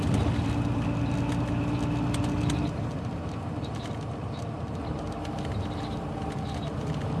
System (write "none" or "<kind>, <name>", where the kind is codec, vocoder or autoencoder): none